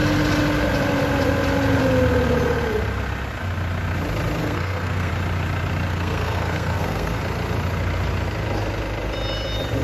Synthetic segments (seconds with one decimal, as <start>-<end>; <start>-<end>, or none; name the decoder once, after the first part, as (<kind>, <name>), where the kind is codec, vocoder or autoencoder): 4.4-5.1 (codec, SNAC); 5.9-7.2